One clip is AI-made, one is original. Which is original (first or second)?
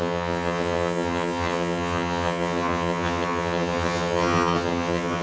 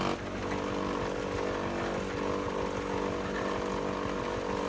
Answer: second